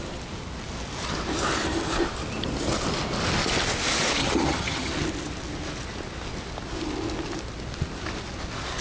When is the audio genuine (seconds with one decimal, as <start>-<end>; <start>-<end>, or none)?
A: 0.0-4.2; 4.9-8.8